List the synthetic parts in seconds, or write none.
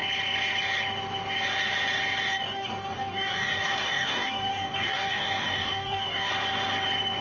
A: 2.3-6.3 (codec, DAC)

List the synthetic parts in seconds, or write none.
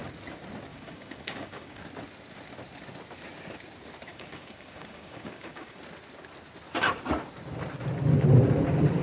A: 0.7-1.8 (codec, DAC); 4.1-5.8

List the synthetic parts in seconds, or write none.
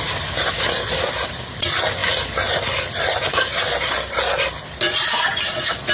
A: none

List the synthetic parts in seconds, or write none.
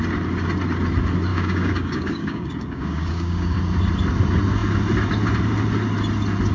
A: 1.3-3.6 (codec, DAC)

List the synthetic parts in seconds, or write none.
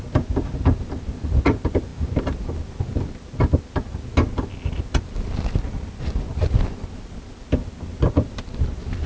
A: none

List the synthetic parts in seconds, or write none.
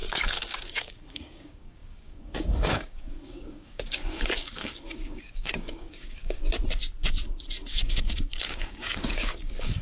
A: 0.0-6.4 (codec, DAC); 7.7-9.8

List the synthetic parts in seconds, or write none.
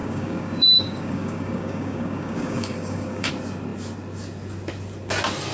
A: 0.0-3.3 (codec, DAC)